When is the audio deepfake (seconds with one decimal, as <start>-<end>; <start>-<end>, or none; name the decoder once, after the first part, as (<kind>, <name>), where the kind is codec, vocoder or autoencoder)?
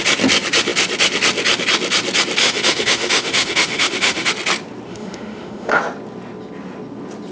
2.4-4.3 (autoencoder, DAC-VAE); 4.9-5.8